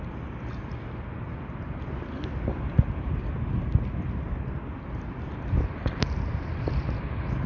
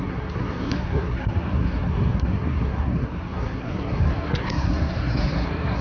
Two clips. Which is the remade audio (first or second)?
second